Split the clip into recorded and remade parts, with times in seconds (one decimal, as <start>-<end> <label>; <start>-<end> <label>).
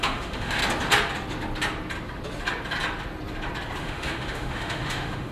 0.0-0.6 remade; 0.6-3.8 recorded; 3.8-5.3 remade